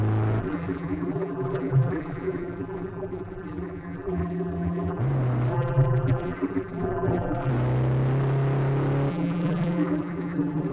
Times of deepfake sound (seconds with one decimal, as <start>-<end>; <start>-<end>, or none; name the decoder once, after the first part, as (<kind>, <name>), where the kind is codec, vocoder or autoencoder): 0.4-5.0 (vocoder, BigVGAN v2); 5.5-7.5; 9.1-10.7